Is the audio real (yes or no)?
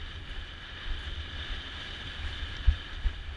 no